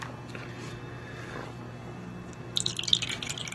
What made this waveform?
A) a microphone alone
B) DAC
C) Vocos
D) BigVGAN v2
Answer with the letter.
A